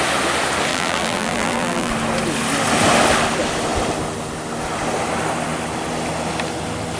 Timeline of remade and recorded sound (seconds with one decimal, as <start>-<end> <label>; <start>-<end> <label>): 0.0-0.7 recorded; 0.7-1.9 remade; 1.9-7.0 recorded